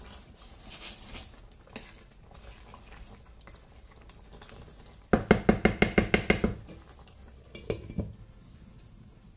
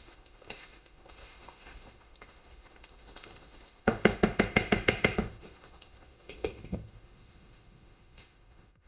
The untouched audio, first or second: first